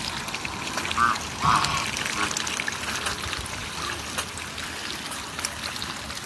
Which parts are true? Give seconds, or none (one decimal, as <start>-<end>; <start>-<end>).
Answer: 0.0-6.3